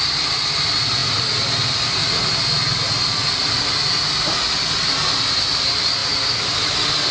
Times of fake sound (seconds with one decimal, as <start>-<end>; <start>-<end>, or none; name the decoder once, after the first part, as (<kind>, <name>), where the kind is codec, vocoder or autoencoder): none